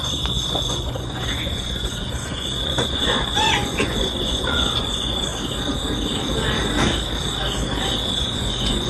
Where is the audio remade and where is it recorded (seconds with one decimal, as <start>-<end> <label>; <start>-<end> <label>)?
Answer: 0.0-5.3 remade; 5.3-8.1 recorded; 8.1-8.9 remade